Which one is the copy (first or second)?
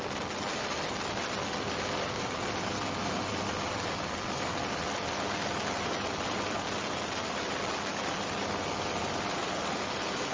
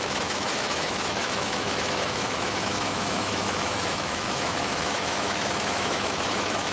second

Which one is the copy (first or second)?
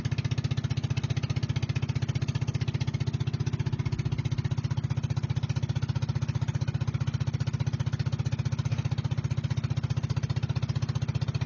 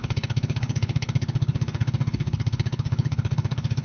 second